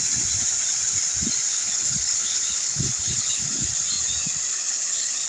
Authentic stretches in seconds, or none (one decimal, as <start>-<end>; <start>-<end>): 0.0-1.5; 3.8-4.5